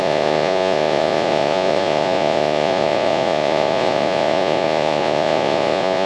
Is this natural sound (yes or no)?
no